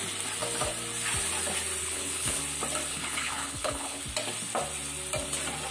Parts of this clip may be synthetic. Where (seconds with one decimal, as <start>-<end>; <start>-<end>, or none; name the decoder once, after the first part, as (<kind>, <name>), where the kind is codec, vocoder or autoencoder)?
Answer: 1.8-2.4 (codec, HILCodec); 2.9-4.0